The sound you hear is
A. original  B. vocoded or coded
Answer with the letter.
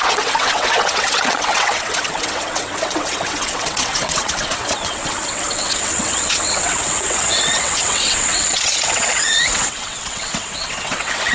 B